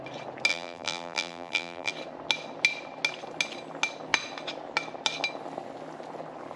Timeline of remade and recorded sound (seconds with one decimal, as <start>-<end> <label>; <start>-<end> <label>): 0.0-0.5 recorded; 0.5-1.9 remade; 1.9-6.6 recorded